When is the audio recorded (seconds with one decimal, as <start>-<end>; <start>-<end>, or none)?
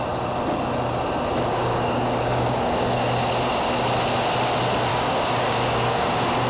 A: 0.0-1.7; 3.0-4.9; 6.1-6.5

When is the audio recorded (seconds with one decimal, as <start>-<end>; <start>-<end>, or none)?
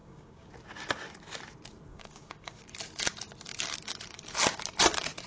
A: 0.5-1.9; 2.6-5.3